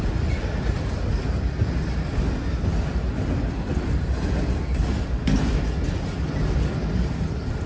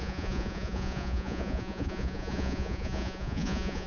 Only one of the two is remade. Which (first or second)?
second